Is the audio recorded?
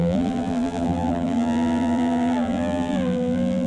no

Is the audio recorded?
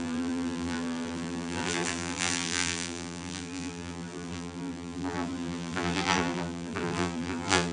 no